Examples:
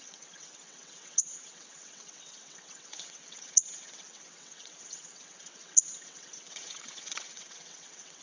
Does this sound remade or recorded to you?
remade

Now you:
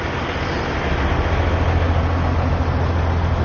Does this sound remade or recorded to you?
recorded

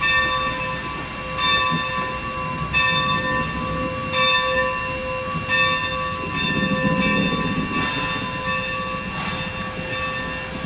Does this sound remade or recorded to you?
recorded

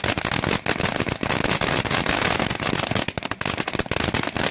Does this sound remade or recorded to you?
recorded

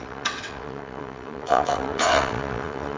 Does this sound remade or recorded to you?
remade